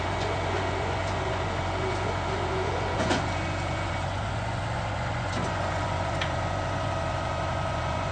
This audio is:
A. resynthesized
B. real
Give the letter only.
A